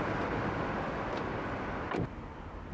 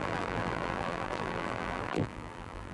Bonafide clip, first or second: first